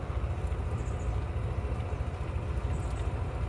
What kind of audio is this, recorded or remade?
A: recorded